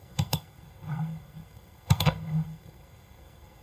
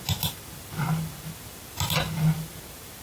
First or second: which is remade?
first